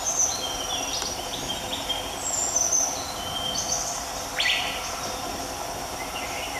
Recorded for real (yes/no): yes